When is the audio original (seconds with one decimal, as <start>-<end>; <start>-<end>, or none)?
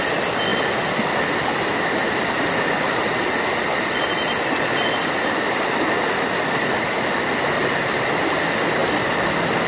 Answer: 0.0-9.7